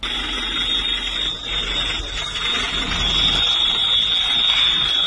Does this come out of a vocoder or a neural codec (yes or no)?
no